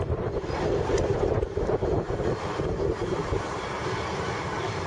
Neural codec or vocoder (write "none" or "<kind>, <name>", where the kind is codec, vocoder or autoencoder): vocoder, BigVGAN v2